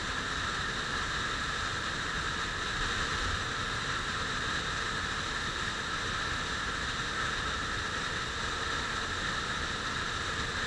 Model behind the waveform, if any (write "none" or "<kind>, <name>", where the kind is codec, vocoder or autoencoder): none